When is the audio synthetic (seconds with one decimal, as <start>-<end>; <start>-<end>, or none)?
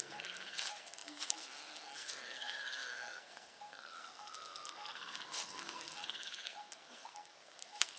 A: 0.0-8.0